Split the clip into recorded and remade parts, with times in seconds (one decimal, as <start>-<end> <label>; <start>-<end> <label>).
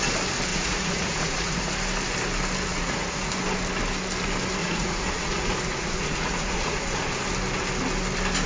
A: 0.0-0.5 recorded; 0.5-1.7 remade; 1.7-2.7 recorded; 2.7-3.3 remade; 3.3-4.6 recorded; 4.6-7.2 remade; 7.2-8.5 recorded